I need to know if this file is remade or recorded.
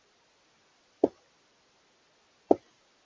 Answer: recorded